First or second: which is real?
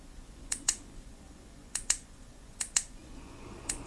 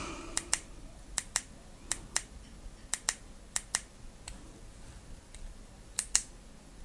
second